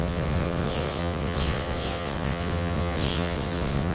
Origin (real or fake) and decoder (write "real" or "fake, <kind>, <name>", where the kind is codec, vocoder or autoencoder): fake, vocoder, WaveNeXt